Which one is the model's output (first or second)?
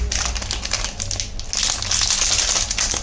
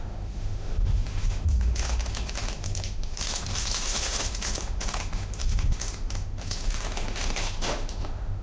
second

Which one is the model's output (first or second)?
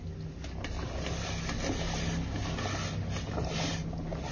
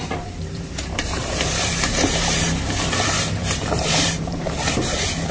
second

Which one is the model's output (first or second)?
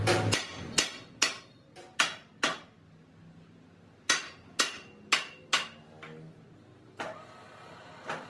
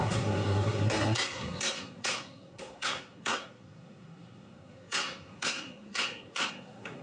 second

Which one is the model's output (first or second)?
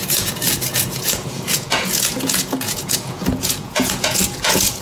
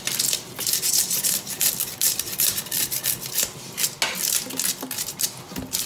first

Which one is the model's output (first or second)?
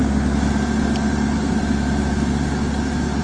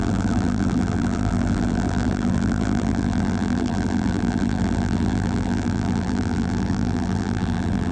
second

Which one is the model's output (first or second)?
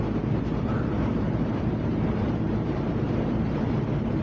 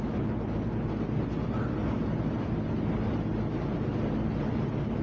first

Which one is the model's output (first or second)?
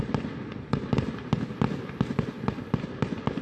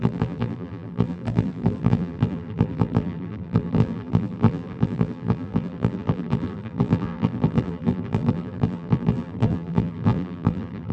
second